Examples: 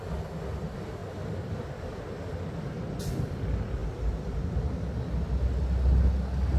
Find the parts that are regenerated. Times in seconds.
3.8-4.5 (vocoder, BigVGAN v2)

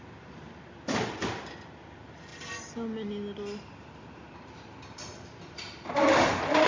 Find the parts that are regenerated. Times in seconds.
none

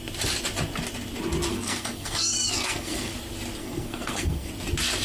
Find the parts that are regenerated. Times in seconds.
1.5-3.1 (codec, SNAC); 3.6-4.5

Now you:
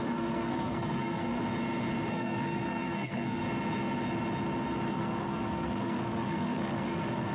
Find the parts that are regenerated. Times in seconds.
0.0-1.4 (codec, SNAC); 2.1-3.4; 4.9-7.3